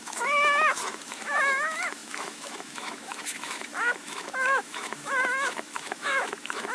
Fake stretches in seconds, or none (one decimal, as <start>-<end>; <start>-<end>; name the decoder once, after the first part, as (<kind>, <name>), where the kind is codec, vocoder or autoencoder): 0.0-6.7 (autoencoder, DAC-VAE)